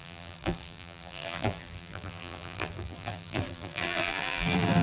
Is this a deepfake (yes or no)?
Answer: yes